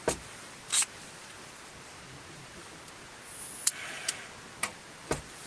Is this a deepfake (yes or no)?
no